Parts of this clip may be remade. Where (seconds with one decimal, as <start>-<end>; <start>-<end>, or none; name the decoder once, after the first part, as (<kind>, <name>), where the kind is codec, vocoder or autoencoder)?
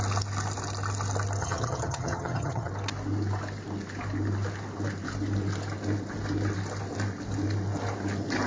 1.4-2.7 (vocoder, HiFi-GAN)